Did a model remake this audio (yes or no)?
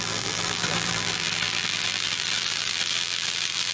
yes